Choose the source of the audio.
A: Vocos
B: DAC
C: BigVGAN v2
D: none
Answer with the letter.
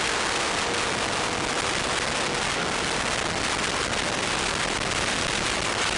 D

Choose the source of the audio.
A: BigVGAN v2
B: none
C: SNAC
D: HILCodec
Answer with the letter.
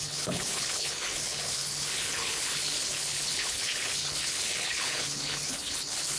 D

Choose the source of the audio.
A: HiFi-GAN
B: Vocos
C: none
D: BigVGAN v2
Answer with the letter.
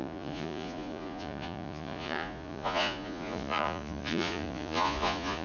B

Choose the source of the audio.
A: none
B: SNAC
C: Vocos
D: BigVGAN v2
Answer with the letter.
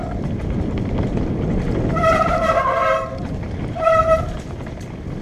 A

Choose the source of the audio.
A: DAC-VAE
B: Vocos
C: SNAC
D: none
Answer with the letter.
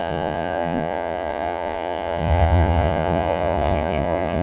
B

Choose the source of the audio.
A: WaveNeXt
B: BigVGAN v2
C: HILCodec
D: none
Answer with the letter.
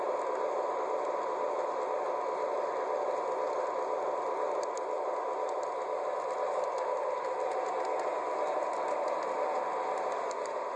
D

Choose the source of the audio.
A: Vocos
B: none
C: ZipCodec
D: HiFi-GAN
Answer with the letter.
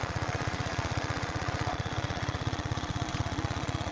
A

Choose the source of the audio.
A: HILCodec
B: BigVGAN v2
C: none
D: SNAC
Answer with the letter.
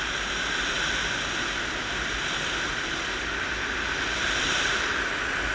C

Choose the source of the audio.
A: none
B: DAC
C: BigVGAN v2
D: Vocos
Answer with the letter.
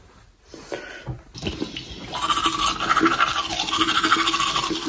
A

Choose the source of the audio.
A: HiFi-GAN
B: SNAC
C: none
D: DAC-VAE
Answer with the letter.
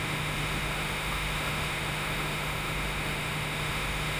D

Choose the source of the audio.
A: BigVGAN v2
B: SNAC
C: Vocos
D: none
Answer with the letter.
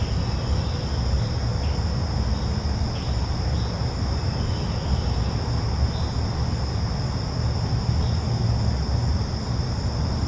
D